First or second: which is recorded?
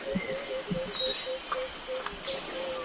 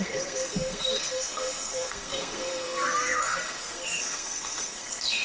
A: first